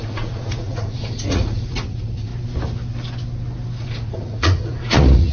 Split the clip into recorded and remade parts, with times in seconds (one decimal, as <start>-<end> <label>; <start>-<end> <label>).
0.0-2.3 remade; 2.3-3.8 recorded; 3.8-5.3 remade